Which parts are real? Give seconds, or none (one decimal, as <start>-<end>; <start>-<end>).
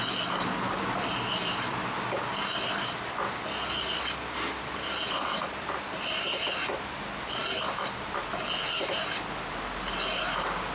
0.0-10.7